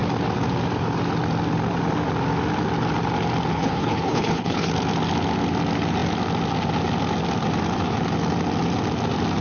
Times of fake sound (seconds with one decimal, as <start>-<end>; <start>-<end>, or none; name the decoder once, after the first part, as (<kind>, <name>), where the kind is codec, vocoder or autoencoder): 3.5-4.7 (codec, HILCodec)